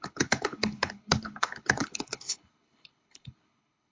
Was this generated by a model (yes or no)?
yes